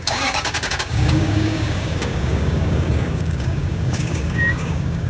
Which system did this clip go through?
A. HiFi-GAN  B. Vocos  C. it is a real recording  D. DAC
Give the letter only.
D